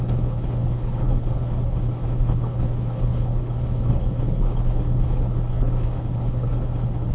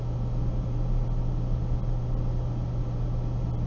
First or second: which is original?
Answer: second